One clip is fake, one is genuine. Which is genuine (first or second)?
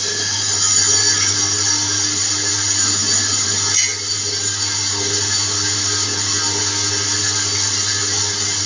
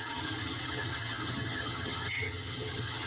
first